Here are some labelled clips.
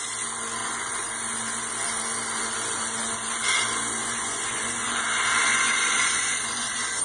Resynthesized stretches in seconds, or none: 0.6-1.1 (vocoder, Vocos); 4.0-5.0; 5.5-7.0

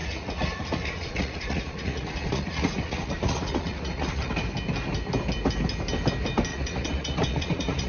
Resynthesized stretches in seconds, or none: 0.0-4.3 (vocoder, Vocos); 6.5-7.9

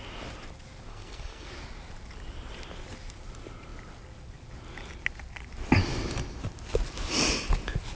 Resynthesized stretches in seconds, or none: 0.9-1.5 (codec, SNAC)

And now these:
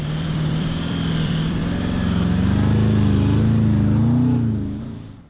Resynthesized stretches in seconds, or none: 0.0-1.6 (vocoder, BigVGAN v2); 4.8-5.3

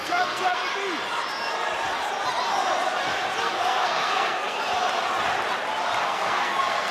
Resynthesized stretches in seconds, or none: 0.0-0.6 (codec, SNAC); 3.4-4.6; 6.0-6.9